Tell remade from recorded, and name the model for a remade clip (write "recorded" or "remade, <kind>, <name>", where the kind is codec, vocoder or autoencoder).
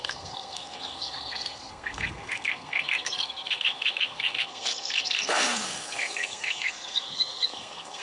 remade, codec, SNAC